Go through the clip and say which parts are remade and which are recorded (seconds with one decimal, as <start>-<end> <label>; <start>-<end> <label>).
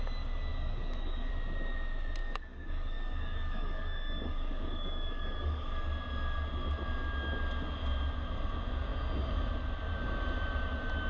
0.0-0.5 recorded; 0.5-1.3 remade; 1.3-2.2 recorded; 2.2-5.8 remade; 5.8-11.1 recorded